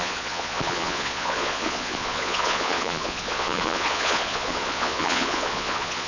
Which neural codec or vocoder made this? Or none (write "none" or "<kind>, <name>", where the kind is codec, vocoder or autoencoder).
vocoder, Vocos